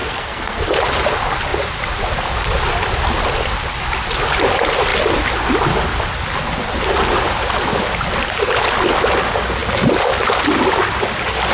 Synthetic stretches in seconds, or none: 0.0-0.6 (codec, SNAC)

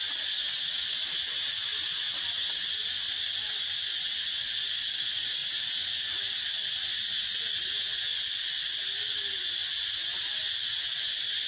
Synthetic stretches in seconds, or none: none

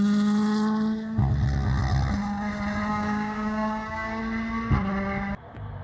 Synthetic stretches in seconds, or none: 2.9-4.2 (codec, DAC)

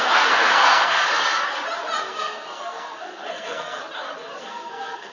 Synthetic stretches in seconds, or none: 0.0-1.1 (codec, SNAC); 2.0-3.8; 4.4-5.1

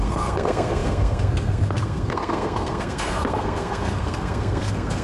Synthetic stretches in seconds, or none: 0.0-5.0 (codec, SNAC)

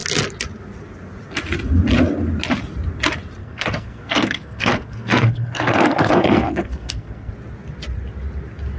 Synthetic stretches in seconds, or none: 3.4-7.3 (codec, SNAC)

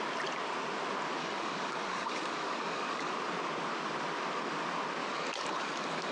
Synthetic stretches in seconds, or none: 1.2-3.1 (codec, DAC); 5.0-6.1